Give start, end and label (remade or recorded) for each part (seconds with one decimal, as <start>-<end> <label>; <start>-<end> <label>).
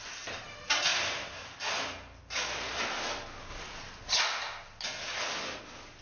0.0-3.5 recorded; 3.5-4.2 remade; 4.2-6.0 recorded